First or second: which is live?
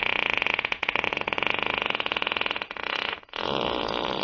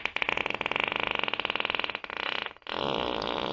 second